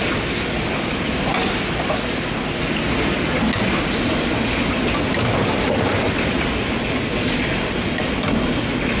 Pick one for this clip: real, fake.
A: real